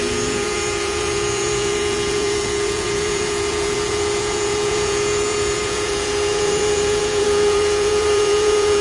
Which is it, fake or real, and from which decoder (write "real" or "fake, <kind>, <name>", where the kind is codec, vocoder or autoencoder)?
fake, vocoder, Vocos